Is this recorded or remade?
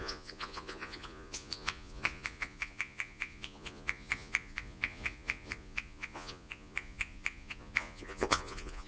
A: remade